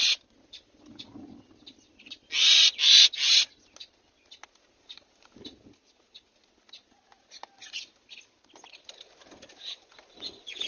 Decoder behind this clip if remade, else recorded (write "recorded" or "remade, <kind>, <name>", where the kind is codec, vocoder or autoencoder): recorded